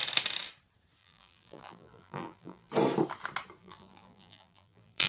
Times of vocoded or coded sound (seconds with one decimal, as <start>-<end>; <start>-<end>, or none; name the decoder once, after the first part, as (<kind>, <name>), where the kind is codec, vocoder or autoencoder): 1.0-2.7 (vocoder, BigVGAN v2); 3.6-5.1